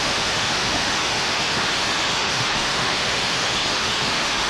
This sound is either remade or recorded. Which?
remade